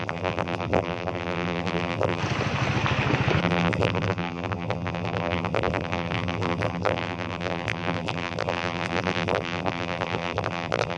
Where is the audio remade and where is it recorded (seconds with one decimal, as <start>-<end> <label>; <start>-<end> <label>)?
0.0-2.2 remade; 2.2-3.4 recorded; 3.4-11.0 remade